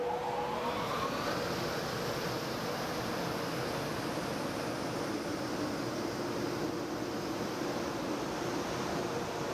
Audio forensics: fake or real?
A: real